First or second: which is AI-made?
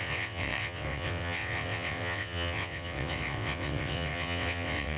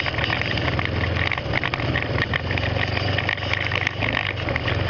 first